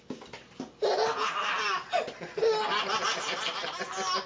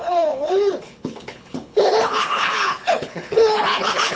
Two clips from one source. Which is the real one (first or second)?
first